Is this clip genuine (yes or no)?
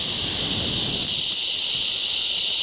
yes